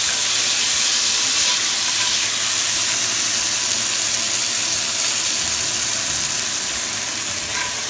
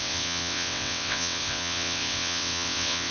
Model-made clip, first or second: second